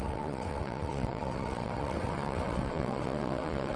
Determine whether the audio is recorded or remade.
remade